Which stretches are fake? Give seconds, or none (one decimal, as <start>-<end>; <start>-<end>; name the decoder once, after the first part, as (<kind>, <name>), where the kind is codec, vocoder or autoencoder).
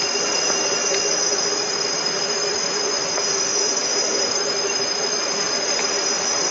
3.5-5.2 (autoencoder, DAC-VAE)